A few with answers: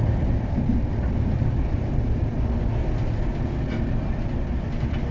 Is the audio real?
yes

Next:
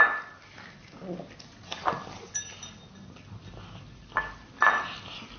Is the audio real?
yes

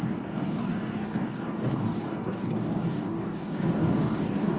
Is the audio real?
no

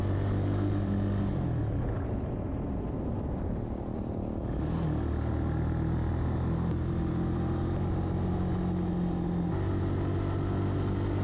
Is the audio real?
yes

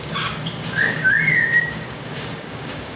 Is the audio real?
no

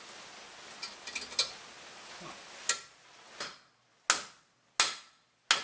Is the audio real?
yes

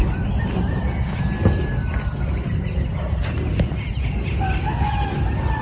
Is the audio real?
yes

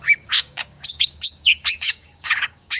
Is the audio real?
no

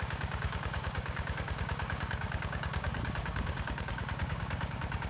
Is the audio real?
no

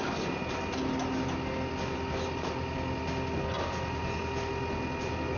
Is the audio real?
yes